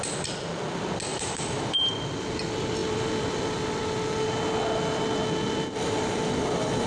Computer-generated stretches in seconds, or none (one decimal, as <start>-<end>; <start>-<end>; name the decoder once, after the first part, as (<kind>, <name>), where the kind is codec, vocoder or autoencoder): 1.1-1.9 (vocoder, BigVGAN v2)